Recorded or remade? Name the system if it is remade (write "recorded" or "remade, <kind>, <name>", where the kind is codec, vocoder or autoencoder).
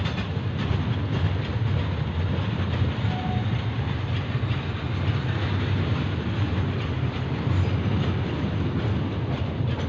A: recorded